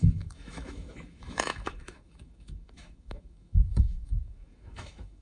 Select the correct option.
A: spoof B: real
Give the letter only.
A